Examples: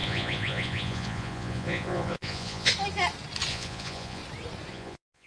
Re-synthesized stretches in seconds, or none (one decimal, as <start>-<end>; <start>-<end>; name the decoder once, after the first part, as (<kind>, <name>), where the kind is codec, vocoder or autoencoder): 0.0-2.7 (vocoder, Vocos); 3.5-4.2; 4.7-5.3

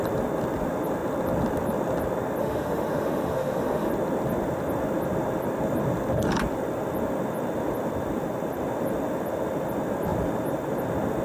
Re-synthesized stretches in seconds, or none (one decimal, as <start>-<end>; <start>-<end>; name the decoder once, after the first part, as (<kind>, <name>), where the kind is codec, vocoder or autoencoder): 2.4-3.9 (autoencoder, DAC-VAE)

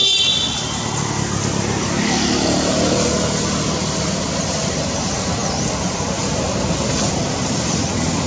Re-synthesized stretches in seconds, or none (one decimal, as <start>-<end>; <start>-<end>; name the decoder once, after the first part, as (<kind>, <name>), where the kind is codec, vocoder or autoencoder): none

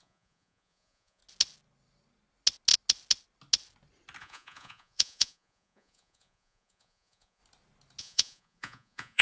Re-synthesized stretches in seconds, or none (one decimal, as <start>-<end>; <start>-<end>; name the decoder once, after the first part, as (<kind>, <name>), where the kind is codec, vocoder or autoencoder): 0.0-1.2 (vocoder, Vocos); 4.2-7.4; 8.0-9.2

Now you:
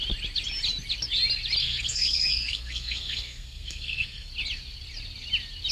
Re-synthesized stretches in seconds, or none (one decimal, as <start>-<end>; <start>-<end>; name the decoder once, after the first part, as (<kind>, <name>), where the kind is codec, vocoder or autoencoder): 1.6-4.3 (codec, SNAC)

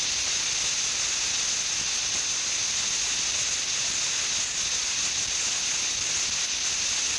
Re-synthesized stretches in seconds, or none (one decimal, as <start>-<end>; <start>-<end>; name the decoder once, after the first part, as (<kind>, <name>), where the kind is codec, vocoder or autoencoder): none

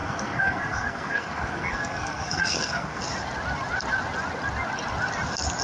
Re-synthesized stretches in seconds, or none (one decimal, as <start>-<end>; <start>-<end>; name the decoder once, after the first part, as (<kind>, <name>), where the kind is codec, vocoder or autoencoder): 0.0-3.0 (codec, SNAC)

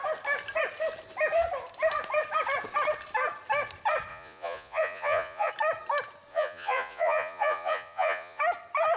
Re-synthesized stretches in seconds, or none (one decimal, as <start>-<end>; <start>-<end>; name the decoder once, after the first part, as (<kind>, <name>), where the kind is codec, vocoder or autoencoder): 4.1-5.5 (vocoder, Vocos); 6.3-8.4